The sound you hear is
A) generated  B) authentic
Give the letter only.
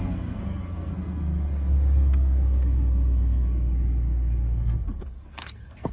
A